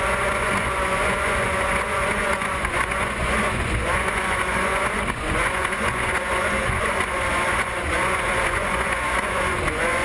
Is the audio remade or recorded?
remade